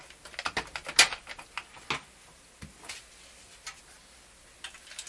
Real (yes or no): yes